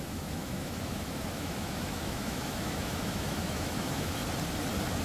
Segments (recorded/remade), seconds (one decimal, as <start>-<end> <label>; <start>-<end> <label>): 0.0-4.2 remade; 4.2-5.0 recorded